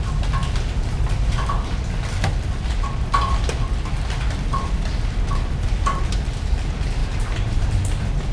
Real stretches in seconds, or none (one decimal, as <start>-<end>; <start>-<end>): 0.0-7.0; 7.8-8.3